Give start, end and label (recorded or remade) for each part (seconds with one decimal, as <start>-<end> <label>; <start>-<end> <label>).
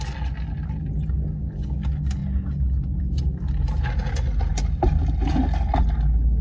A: 0.0-6.4 recorded